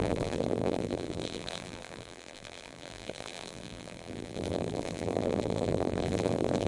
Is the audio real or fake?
fake